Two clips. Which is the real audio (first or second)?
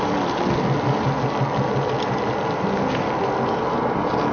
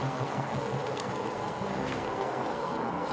first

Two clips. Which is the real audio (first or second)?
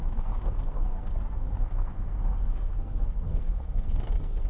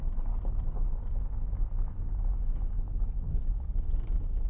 second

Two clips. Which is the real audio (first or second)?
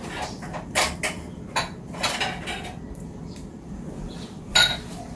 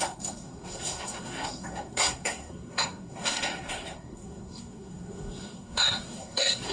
first